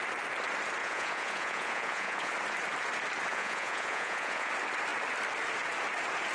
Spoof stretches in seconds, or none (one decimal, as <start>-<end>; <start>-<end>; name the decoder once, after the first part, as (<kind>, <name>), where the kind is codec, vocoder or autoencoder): 0.8-2.3 (vocoder, Vocos); 3.3-4.5